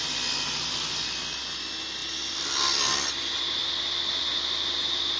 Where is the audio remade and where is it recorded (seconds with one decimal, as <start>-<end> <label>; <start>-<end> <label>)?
0.0-2.0 recorded; 2.0-3.1 remade; 3.1-5.2 recorded